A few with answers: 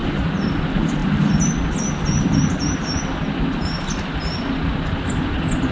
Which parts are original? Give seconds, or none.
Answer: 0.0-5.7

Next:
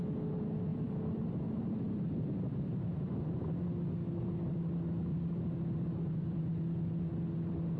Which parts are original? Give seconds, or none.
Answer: 0.0-0.7; 1.4-5.1; 6.4-7.8

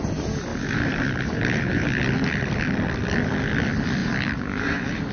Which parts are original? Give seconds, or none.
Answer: 0.0-0.5; 2.6-4.0

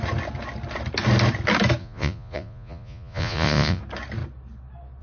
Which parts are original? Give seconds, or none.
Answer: 0.0-1.8; 3.8-5.0

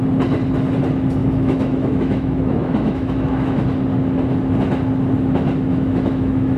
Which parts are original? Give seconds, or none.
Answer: 0.0-1.2; 3.6-5.7

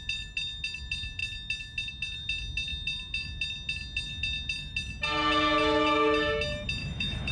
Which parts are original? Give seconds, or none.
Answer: 0.0-6.8